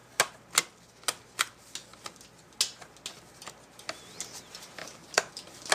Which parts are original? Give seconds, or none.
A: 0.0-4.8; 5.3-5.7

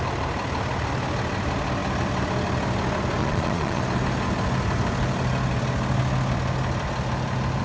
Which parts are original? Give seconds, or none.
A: 0.0-3.2; 3.8-7.6

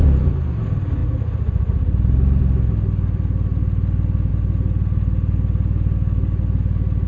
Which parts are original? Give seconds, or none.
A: 0.0-7.1

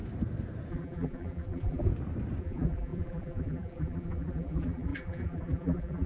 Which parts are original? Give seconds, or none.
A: 0.0-0.7; 1.9-2.4

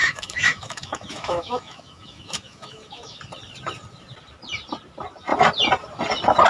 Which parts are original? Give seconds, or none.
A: 3.2-6.5

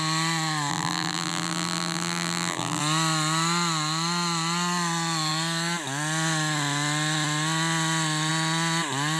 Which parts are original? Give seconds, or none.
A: 0.0-0.7; 2.8-9.2

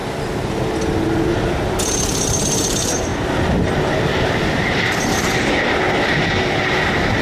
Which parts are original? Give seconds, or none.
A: 0.0-7.2

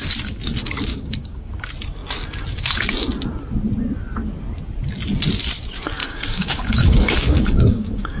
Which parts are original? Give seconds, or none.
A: 0.0-0.9; 1.5-6.0